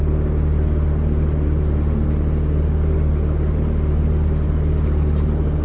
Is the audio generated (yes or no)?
no